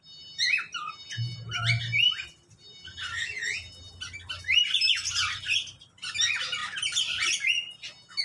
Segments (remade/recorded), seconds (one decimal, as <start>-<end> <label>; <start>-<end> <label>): 0.0-8.2 recorded